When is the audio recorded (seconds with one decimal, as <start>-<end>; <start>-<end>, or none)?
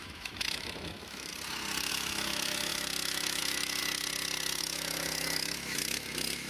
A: 1.3-1.9; 3.8-4.6